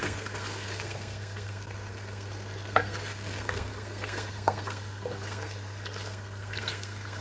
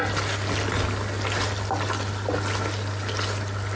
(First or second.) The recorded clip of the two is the second